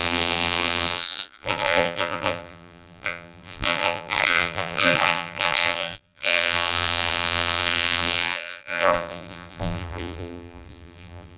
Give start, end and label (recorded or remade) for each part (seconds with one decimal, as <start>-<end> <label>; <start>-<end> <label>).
0.0-11.4 remade